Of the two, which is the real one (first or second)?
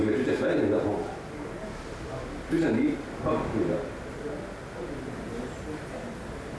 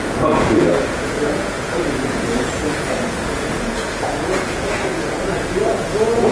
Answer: first